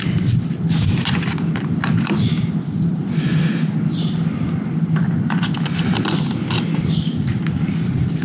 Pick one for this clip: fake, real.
real